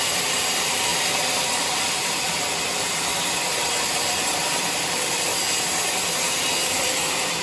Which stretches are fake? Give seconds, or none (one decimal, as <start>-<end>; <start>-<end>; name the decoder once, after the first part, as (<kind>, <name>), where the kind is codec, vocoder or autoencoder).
0.0-3.1 (vocoder, BigVGAN v2); 3.9-5.3; 6.7-7.4